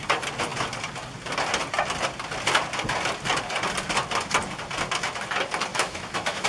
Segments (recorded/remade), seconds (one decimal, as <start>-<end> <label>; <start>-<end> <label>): 0.0-5.7 recorded; 5.7-6.5 remade